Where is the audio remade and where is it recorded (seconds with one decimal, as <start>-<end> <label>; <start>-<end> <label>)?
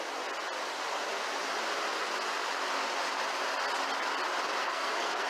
0.0-4.6 recorded; 4.6-5.3 remade